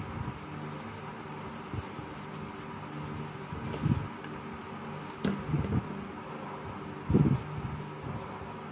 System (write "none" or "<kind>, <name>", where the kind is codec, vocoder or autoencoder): none